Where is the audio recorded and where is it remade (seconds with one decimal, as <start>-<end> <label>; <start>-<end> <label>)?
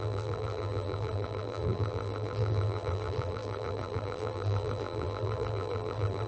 0.0-6.3 remade